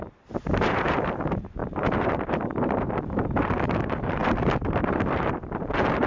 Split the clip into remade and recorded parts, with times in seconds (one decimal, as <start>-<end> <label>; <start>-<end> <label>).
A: 0.0-6.1 remade